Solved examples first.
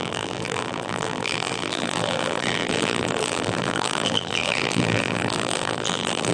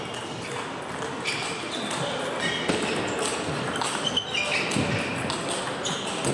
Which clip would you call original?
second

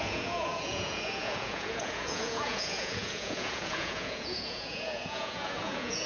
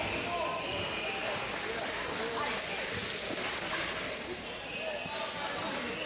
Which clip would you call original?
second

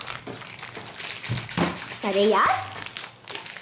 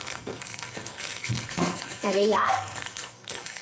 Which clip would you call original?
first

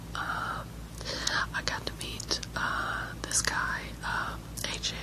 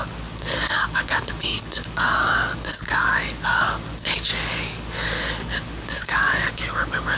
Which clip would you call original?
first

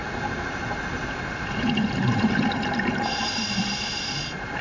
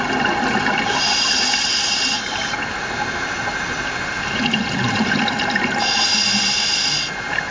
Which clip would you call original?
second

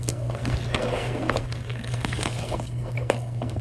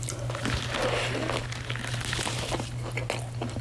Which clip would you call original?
second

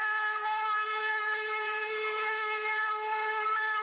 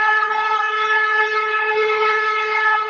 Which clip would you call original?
first